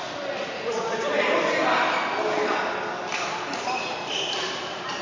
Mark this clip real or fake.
real